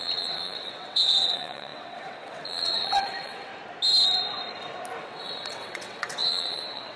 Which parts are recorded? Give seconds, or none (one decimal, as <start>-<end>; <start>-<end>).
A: 3.5-5.0